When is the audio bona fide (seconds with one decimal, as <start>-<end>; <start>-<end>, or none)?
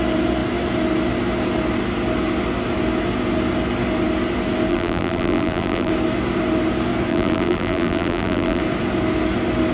0.0-4.7; 5.9-7.1; 8.6-9.7